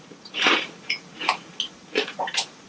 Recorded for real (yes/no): no